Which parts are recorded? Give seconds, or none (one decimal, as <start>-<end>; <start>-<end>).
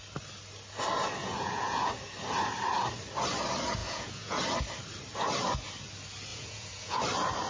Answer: 0.0-1.2; 1.9-3.8; 4.4-6.3; 7.0-7.5